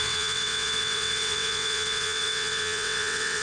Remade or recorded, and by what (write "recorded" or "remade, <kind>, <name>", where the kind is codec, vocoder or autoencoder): remade, vocoder, WaveNeXt